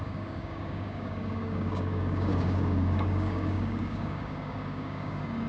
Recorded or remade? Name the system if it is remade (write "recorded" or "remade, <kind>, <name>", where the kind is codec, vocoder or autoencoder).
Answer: remade, codec, DAC